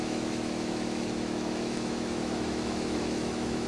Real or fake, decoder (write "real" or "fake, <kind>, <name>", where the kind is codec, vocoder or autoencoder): fake, autoencoder, DAC-VAE